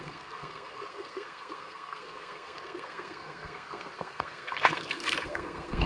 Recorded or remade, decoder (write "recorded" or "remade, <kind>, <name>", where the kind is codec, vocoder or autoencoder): remade, codec, SNAC